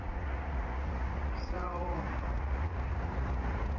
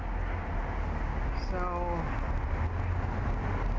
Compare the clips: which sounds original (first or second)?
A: second